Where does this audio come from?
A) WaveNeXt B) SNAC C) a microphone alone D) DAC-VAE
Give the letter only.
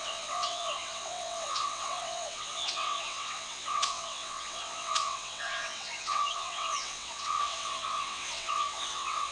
A